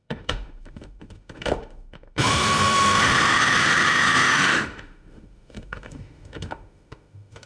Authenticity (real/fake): fake